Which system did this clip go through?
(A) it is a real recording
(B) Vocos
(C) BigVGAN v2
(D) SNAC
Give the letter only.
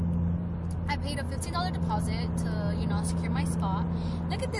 A